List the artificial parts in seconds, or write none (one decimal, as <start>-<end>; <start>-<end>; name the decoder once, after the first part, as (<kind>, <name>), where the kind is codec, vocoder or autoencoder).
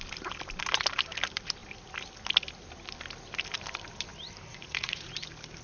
4.5-5.1 (vocoder, Vocos)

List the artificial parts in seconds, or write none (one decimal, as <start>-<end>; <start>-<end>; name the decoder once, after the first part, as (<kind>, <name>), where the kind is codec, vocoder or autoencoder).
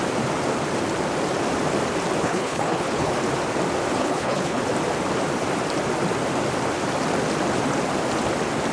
2.2-3.1 (codec, HILCodec); 4.0-4.6